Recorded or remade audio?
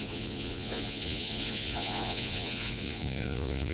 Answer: remade